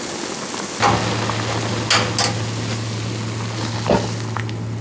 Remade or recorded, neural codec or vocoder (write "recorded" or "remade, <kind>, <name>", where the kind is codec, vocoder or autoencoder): recorded